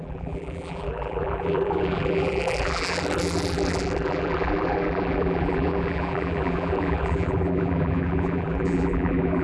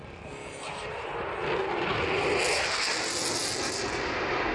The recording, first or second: second